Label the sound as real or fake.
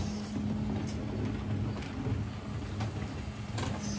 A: real